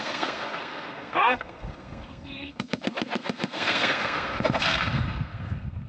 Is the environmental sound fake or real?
fake